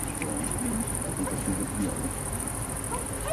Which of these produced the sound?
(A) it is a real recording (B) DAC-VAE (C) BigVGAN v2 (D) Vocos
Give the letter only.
C